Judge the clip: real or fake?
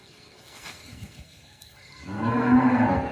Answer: fake